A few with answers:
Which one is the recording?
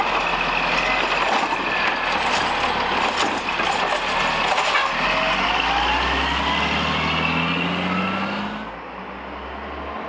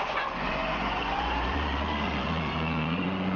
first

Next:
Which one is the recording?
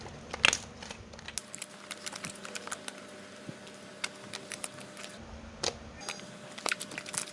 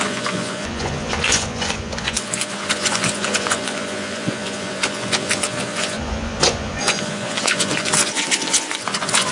first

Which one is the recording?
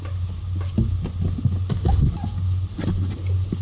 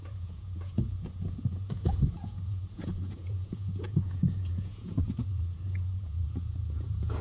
first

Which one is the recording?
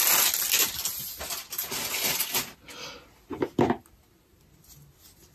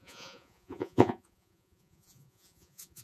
first